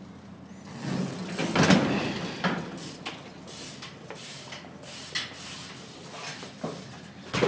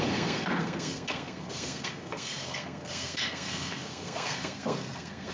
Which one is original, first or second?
first